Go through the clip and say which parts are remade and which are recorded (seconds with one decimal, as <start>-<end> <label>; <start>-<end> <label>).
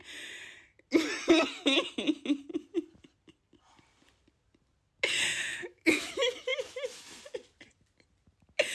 0.0-5.3 recorded; 5.3-6.1 remade; 6.1-6.5 recorded; 6.5-7.2 remade; 7.2-8.7 recorded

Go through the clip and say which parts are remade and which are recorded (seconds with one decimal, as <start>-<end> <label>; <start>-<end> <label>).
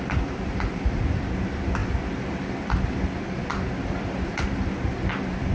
0.0-5.5 remade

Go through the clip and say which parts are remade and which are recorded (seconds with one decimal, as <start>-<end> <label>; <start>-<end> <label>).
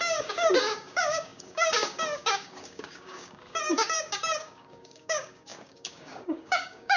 0.0-7.0 remade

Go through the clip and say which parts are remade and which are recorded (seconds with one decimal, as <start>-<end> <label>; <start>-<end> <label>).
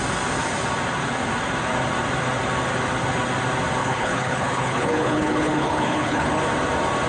0.0-3.8 recorded; 3.8-6.4 remade; 6.4-7.1 recorded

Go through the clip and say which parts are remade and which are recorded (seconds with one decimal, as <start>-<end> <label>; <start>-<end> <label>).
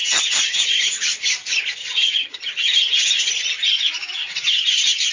0.0-0.8 remade; 0.8-1.8 recorded; 1.8-3.3 remade; 3.3-4.2 recorded; 4.2-5.1 remade